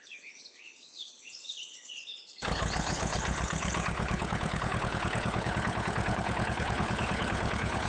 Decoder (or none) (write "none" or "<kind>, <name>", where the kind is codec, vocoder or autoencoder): codec, HILCodec